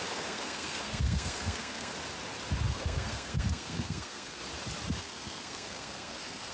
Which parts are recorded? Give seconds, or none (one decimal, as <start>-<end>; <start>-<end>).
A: 1.9-2.7; 4.4-5.0

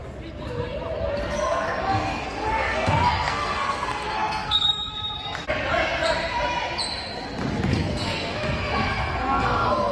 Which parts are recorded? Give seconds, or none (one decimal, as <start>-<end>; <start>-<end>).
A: 0.0-1.3; 4.9-7.7

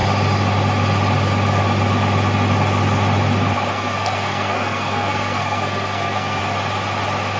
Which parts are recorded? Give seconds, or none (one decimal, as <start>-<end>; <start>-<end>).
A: 0.0-3.7; 6.4-7.4

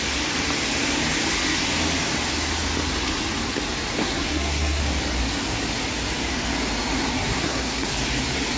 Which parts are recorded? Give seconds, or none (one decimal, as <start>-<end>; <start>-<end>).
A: 0.0-4.0; 4.8-7.1; 7.9-8.6

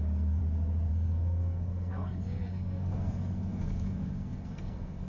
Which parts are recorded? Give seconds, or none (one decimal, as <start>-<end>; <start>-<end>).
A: 0.4-0.9